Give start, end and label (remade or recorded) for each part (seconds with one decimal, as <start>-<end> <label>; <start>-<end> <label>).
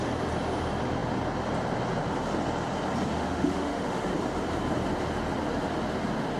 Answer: 0.0-3.1 recorded; 3.1-4.1 remade; 4.1-6.4 recorded